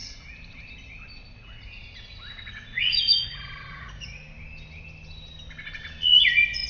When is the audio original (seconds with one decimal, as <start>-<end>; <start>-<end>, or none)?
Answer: 0.0-1.4; 4.2-6.2